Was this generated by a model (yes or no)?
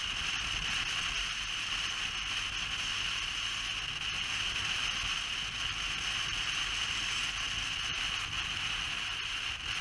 no